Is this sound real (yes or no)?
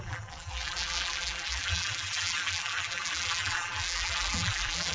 no